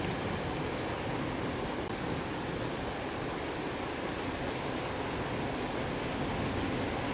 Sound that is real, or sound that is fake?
real